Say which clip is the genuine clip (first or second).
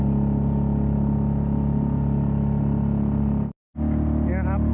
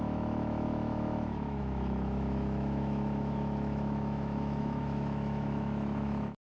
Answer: first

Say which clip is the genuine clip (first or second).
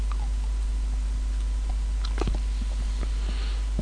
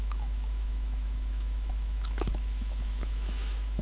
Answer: first